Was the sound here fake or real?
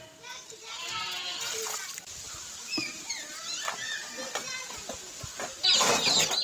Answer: real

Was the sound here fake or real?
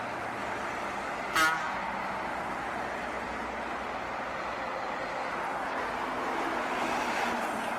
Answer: real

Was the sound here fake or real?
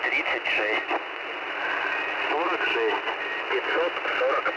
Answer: real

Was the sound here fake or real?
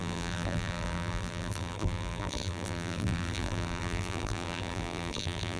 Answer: fake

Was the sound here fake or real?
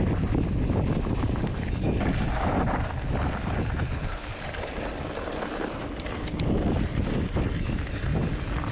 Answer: real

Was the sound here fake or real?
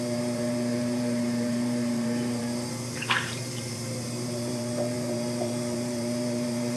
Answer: fake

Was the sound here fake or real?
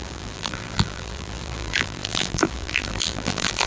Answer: fake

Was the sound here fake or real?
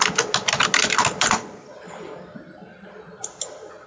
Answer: real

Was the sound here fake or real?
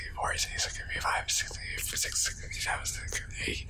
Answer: fake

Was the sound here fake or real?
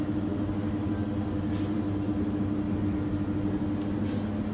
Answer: real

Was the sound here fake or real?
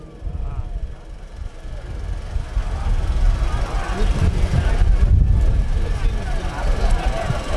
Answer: real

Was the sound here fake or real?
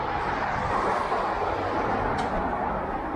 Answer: fake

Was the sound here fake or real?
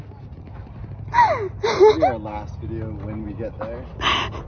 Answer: real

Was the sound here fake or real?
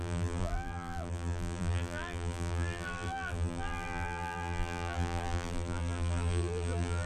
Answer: fake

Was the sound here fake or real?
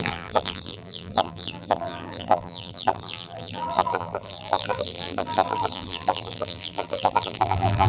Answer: fake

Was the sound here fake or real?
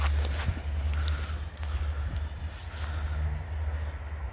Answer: real